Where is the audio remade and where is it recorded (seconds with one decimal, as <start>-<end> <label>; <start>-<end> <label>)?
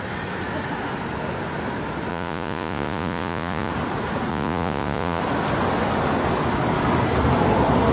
0.0-2.1 recorded; 2.1-3.7 remade; 3.7-4.3 recorded; 4.3-5.2 remade; 5.2-7.9 recorded